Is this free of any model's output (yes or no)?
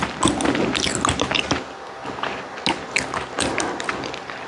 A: yes